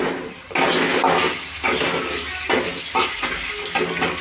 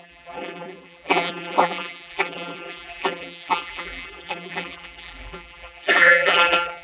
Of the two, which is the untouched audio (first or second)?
first